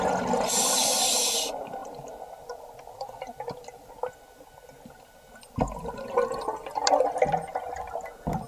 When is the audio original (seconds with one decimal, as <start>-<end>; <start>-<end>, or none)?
0.0-1.8; 3.9-8.5